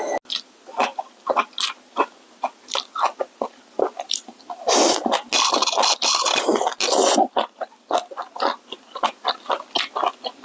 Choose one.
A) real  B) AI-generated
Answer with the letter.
A